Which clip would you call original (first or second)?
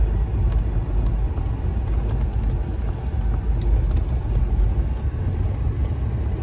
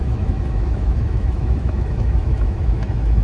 first